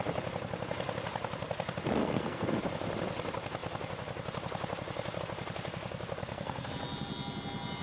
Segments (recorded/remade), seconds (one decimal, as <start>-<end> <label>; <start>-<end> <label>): 0.0-2.0 recorded; 2.0-2.6 remade; 2.6-6.2 recorded; 6.2-6.7 remade; 6.7-7.8 recorded